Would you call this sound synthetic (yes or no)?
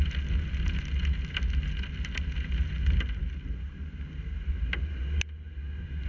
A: no